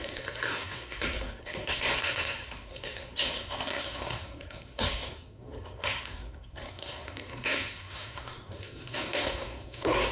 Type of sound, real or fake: fake